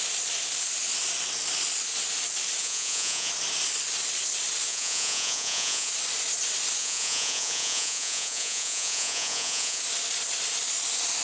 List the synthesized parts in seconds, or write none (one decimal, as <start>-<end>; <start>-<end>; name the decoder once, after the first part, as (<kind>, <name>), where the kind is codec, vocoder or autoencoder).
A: 2.6-3.3 (vocoder, Vocos); 4.7-5.9; 6.8-9.8